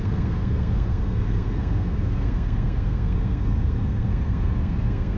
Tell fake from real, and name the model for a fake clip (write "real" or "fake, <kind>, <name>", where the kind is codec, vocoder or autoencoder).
fake, codec, SNAC